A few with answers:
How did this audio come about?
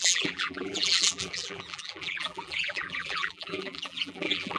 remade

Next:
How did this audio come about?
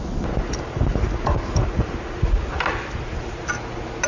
recorded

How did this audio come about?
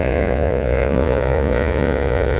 remade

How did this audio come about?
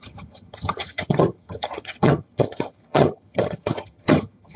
remade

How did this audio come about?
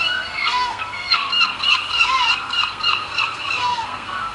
remade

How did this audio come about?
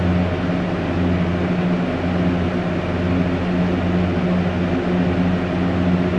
recorded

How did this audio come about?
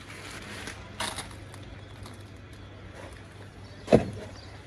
recorded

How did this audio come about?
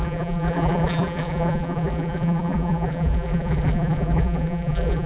remade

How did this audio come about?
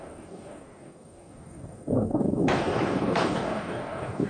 remade